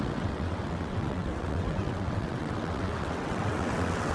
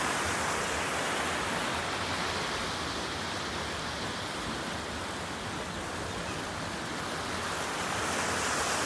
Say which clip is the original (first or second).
second